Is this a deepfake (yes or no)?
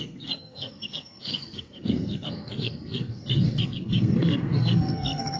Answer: yes